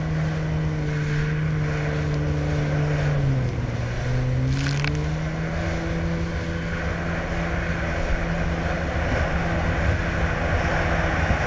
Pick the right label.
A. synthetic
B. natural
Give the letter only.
B